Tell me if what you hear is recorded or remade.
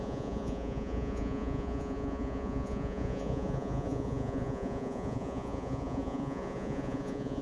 remade